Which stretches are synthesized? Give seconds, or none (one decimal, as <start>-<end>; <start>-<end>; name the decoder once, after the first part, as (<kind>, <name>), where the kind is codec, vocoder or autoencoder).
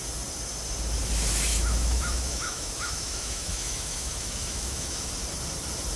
1.5-5.1 (autoencoder, DAC-VAE)